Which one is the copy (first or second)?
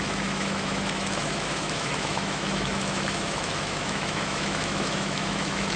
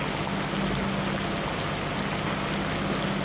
first